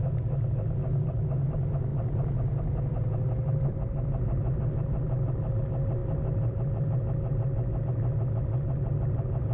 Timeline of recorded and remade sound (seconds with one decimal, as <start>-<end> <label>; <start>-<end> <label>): 0.0-9.5 recorded